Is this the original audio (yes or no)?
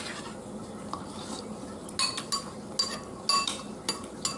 yes